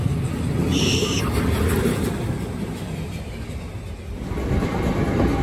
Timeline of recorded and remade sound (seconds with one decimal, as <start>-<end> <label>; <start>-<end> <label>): 0.0-5.4 recorded

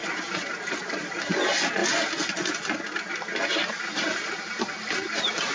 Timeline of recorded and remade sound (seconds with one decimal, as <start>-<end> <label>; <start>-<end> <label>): 0.0-5.5 recorded